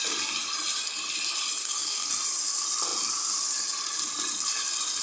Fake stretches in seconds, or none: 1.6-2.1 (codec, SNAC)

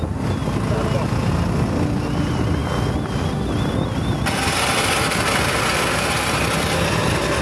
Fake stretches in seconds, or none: none